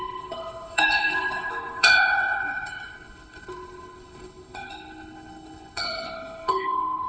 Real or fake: fake